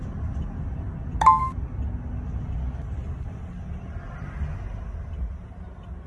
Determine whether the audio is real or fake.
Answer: real